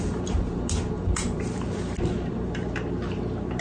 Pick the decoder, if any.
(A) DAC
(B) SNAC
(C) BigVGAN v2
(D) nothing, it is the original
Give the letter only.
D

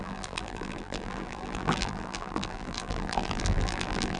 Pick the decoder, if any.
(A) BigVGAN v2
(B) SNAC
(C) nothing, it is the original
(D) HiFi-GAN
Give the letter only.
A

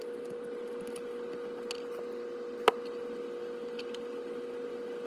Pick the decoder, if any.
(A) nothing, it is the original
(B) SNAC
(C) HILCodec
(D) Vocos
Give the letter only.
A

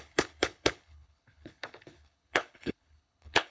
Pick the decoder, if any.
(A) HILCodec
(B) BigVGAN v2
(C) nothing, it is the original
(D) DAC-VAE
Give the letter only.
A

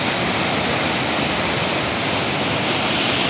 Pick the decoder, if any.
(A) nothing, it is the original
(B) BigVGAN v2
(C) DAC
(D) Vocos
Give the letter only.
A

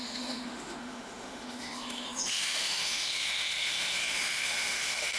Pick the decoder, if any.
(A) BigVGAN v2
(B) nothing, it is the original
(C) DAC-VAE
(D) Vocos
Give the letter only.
C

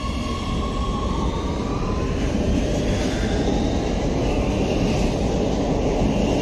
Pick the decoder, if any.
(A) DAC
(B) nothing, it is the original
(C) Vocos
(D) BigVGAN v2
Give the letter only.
B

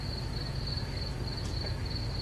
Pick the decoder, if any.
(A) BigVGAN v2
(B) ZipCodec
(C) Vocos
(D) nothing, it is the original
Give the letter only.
D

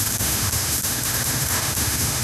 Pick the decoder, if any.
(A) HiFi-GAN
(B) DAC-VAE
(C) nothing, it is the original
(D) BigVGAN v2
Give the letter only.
B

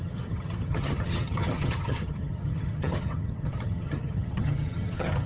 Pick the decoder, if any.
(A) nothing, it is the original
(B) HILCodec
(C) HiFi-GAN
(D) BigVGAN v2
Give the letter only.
C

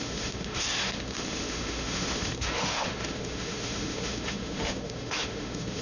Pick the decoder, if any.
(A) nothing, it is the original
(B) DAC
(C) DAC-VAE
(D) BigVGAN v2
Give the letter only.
C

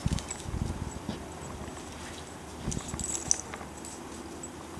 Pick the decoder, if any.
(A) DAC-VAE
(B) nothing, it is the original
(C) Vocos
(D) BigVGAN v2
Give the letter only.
B